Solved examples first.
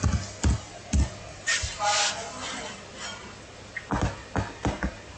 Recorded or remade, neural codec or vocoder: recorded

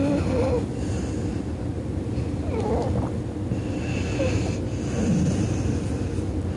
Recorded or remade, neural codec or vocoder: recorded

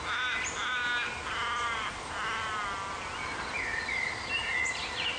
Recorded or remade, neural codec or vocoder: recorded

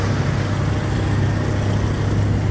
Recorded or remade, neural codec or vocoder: recorded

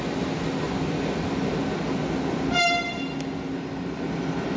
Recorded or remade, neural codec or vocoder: recorded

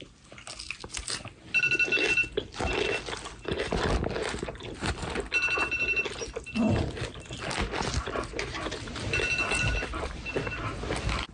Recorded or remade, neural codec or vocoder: recorded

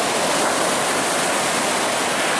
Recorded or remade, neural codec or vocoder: recorded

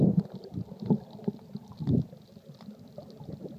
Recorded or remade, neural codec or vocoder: recorded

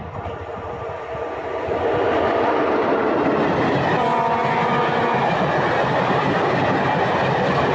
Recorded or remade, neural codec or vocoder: recorded